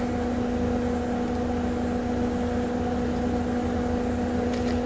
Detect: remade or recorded recorded